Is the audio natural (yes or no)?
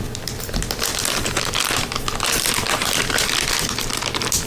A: yes